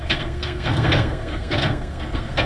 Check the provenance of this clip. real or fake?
fake